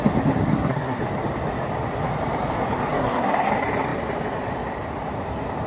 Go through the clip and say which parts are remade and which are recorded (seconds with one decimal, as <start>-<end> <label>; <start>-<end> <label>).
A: 0.0-0.4 recorded; 0.4-1.0 remade; 1.0-2.9 recorded; 2.9-3.5 remade; 3.5-5.7 recorded

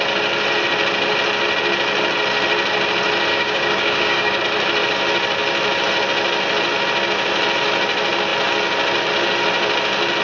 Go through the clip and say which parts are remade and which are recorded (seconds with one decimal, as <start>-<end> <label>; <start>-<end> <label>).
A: 0.0-3.3 recorded; 3.3-4.4 remade; 4.4-10.2 recorded

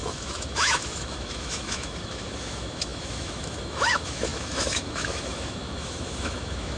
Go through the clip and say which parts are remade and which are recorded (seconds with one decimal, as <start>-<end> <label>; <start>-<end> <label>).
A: 0.0-6.8 remade

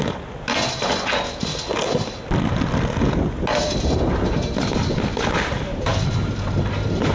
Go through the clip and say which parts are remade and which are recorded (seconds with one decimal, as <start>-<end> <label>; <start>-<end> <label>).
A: 0.0-3.5 recorded; 3.5-4.0 remade; 4.0-5.9 recorded; 5.9-7.1 remade

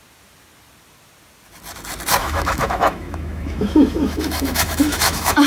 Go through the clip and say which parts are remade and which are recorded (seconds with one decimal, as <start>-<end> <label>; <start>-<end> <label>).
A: 0.0-2.2 recorded; 2.2-5.5 remade

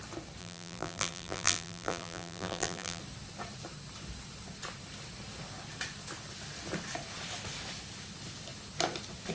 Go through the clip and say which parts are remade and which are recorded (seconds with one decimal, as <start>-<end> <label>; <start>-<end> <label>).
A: 0.0-0.4 recorded; 0.4-3.0 remade; 3.0-9.3 recorded